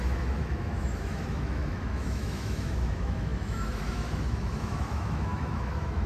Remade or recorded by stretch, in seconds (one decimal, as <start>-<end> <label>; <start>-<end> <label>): 0.0-6.1 remade